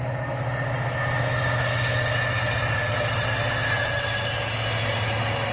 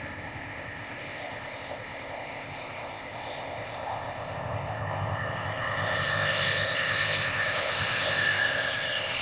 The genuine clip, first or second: first